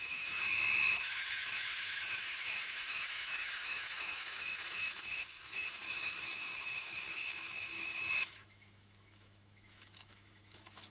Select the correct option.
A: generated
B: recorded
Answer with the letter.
A